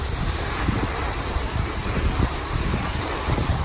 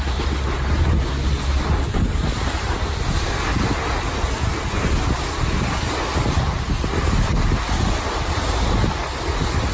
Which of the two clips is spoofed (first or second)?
first